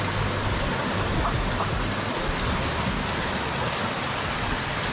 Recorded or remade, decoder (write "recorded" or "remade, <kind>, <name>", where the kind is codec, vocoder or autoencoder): recorded